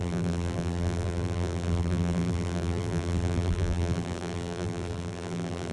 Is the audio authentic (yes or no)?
no